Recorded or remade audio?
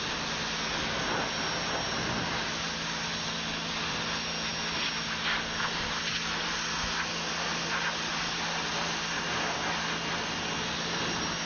recorded